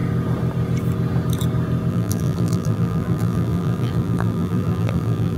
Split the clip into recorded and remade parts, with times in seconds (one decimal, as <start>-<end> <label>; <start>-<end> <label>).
0.0-1.9 recorded; 1.9-5.4 remade